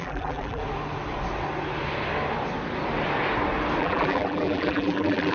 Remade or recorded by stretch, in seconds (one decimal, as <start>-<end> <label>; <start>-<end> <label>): 0.0-0.6 remade; 0.6-3.8 recorded; 3.8-5.3 remade